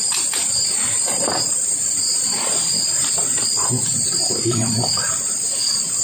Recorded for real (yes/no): no